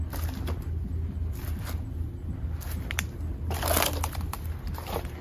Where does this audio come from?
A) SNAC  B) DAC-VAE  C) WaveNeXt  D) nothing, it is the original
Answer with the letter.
D